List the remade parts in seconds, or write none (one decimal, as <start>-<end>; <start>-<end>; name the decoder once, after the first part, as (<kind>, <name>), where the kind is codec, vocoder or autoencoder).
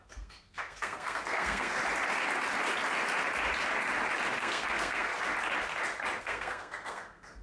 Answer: 0.0-1.8 (codec, SNAC); 4.4-5.1; 6.2-7.4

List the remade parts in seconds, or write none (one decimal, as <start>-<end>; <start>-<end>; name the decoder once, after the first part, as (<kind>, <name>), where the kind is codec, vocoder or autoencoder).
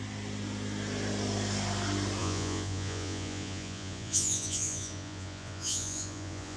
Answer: 2.2-6.6 (vocoder, Vocos)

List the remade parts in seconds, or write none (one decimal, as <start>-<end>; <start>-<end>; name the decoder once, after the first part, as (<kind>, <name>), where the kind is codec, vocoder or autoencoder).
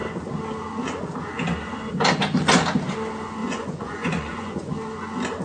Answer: 3.4-4.7 (vocoder, Vocos)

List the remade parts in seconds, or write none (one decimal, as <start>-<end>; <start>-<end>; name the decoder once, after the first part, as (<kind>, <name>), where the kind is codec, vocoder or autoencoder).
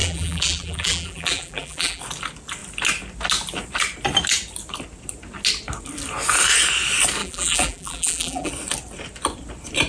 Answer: 0.0-2.0 (vocoder, BigVGAN v2); 7.2-8.5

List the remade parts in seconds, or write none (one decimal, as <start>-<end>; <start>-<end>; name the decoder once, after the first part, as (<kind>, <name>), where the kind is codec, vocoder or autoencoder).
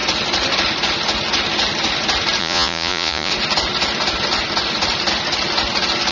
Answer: 2.4-3.3 (vocoder, Vocos)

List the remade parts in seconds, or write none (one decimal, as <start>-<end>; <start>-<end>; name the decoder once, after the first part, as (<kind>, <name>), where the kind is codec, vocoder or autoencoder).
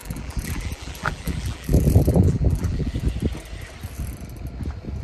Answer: 0.0-3.0 (vocoder, BigVGAN v2)